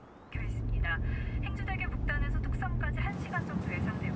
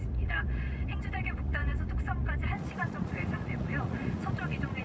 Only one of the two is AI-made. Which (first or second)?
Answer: second